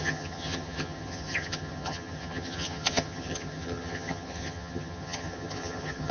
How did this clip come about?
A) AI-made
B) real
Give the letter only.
A